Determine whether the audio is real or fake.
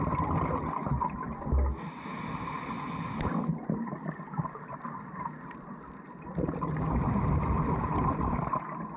real